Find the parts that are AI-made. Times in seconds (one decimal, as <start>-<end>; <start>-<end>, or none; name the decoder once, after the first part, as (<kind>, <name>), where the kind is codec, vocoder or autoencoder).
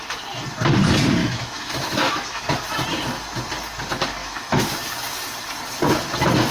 1.2-2.4 (autoencoder, DAC-VAE); 4.2-4.7